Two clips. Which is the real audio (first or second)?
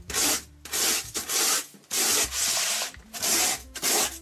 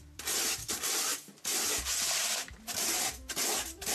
first